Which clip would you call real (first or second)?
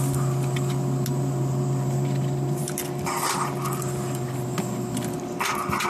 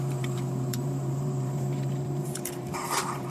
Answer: first